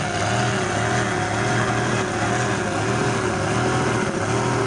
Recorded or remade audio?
recorded